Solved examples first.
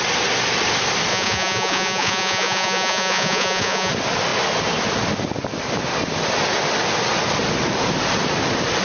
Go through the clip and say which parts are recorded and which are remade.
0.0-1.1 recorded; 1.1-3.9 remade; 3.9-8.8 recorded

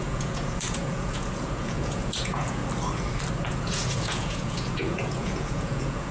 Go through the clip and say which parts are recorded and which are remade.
0.0-2.6 remade; 2.6-3.5 recorded; 3.5-6.1 remade

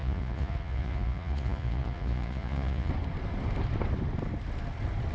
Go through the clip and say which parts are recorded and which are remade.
0.0-2.9 remade; 2.9-5.1 recorded

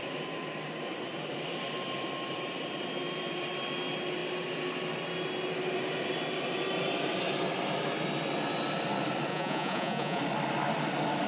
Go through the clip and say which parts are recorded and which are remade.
0.0-9.3 recorded; 9.3-10.2 remade; 10.2-11.3 recorded

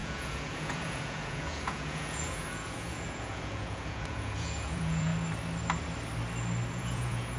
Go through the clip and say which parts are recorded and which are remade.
0.0-5.1 remade; 5.1-6.7 recorded; 6.7-7.4 remade

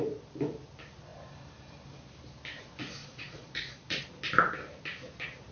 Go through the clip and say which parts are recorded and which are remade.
0.0-3.0 recorded; 3.0-4.0 remade; 4.0-5.5 recorded